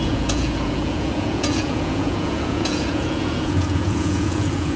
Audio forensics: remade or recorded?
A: remade